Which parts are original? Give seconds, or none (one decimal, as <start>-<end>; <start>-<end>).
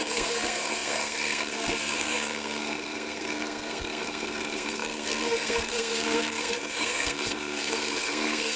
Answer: none